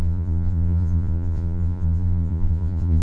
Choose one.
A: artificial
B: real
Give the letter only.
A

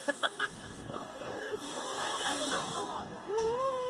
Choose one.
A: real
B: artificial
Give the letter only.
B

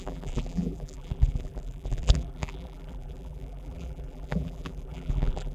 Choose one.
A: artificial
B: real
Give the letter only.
A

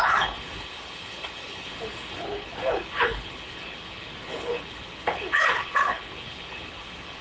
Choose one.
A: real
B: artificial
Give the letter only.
B